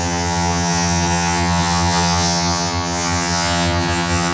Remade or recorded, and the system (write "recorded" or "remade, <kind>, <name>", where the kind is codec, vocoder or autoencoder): remade, vocoder, HiFi-GAN